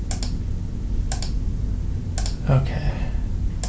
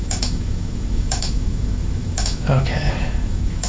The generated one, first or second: second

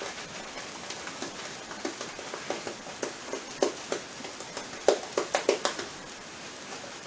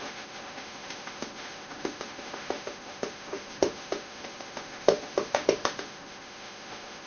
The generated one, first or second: second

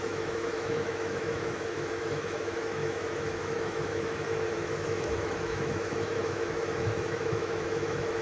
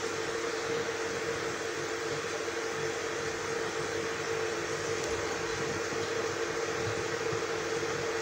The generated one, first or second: first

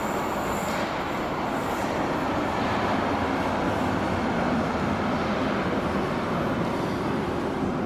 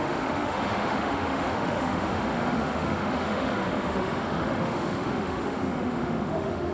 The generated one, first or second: second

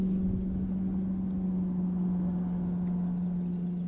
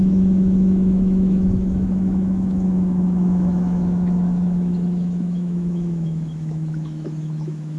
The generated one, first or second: second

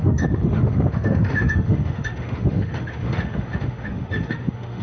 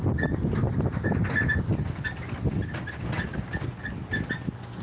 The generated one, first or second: first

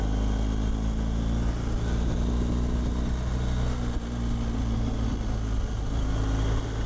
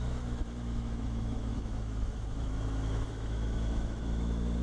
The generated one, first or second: second